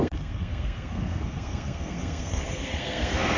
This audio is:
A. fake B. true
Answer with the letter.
A